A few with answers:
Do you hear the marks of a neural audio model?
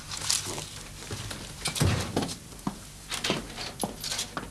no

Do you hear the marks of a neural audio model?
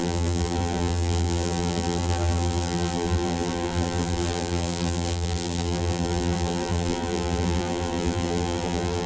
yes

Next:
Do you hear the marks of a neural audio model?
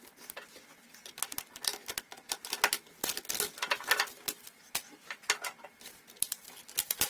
no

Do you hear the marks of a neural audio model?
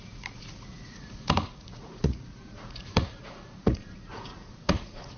yes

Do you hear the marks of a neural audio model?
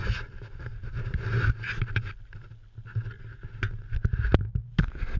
no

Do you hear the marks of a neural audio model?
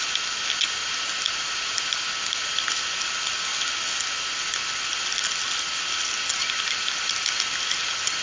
no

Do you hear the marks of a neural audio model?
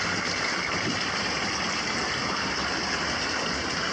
no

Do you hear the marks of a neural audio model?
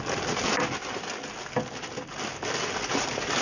no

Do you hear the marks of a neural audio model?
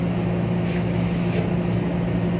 no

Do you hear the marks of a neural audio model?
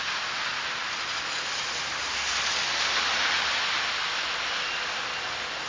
no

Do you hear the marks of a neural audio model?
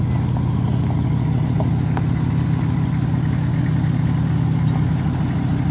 no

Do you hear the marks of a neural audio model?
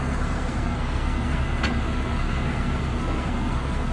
yes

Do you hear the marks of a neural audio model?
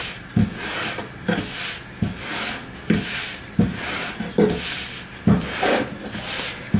no